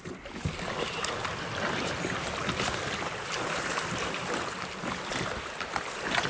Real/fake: real